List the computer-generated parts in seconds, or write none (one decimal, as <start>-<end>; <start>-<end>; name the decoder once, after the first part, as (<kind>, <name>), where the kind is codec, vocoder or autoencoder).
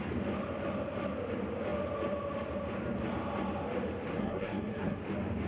4.1-5.0 (codec, SNAC)